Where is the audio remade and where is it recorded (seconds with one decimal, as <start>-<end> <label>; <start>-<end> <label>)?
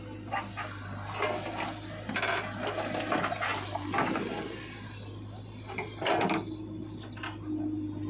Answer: 0.0-8.1 recorded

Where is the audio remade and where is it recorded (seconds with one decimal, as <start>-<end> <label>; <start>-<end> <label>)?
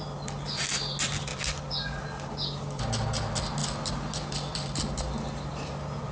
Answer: 0.0-6.1 recorded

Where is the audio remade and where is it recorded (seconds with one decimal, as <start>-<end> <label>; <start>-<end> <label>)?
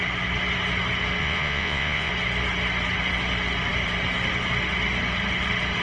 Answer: 0.0-1.2 recorded; 1.2-2.1 remade; 2.1-5.8 recorded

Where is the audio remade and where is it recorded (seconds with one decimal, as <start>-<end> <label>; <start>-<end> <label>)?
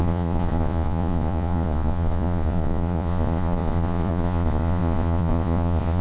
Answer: 0.0-6.0 remade